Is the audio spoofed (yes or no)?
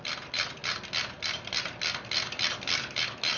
no